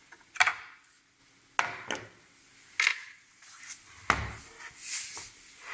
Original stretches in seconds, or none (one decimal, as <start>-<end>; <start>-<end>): 0.0-2.9; 3.6-5.7